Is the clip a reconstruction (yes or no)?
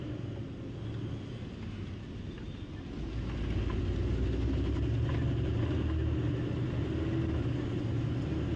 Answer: no